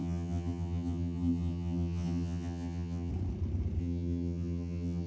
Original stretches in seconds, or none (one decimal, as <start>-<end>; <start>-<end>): 3.1-3.8